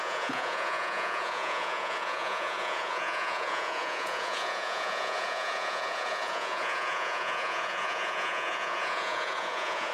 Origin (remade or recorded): remade